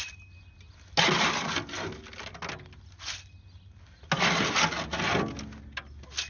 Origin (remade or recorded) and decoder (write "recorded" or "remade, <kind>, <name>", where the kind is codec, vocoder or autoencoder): recorded